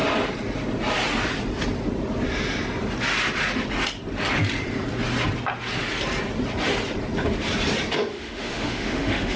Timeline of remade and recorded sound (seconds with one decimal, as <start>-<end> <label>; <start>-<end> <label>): 0.0-8.1 recorded; 8.1-9.4 remade